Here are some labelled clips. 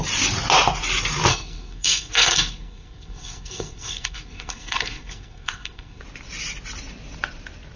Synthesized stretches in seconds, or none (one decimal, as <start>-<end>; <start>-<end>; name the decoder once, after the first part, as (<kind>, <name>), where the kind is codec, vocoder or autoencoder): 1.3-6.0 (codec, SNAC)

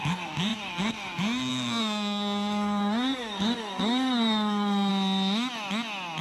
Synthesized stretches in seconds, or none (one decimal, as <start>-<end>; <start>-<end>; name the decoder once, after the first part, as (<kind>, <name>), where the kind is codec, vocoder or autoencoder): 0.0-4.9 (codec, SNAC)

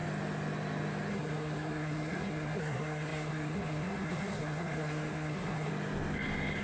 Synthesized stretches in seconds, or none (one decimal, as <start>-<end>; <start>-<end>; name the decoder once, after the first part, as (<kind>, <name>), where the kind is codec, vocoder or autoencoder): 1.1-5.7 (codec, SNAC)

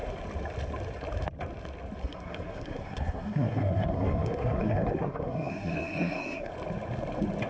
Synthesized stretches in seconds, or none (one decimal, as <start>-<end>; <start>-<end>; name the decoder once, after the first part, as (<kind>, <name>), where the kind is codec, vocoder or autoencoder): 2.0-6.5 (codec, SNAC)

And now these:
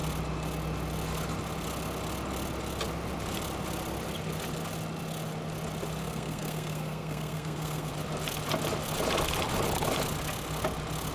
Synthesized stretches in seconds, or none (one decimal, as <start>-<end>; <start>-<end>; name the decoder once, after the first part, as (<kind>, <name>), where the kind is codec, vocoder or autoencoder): 6.0-7.9 (codec, SNAC)